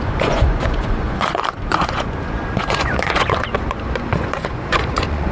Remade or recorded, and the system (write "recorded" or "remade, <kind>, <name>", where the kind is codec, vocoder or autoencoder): remade, vocoder, Vocos